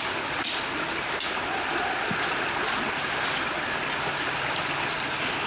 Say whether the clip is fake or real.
real